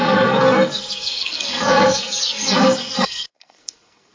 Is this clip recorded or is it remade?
remade